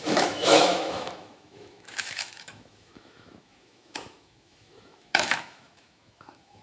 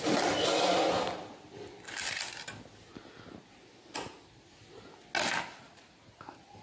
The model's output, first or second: first